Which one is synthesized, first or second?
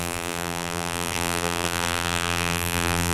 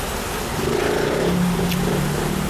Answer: first